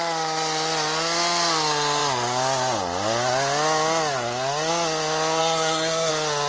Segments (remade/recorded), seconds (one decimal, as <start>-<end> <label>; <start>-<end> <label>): 0.0-5.4 recorded; 5.4-6.1 remade; 6.1-6.5 recorded